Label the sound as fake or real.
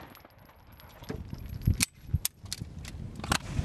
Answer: real